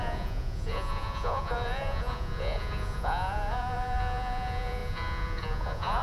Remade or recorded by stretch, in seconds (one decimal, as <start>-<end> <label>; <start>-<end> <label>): 0.0-6.0 remade